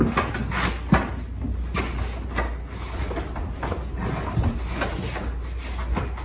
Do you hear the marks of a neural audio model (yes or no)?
no